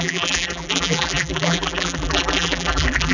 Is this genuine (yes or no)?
no